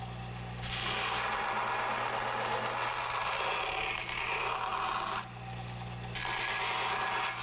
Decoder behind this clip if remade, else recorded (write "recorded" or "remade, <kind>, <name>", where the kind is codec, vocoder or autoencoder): recorded